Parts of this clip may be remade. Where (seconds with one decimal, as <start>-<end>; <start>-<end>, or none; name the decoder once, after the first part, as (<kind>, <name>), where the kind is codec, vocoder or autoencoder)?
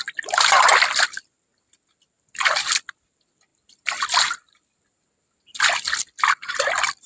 none